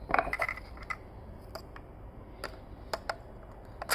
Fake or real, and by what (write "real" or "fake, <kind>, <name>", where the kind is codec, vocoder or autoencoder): real